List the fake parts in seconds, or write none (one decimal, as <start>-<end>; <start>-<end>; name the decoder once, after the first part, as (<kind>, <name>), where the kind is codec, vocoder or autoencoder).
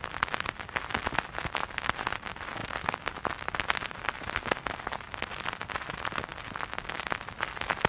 none